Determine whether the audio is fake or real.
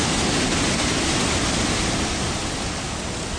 real